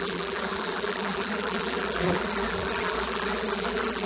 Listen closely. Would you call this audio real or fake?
fake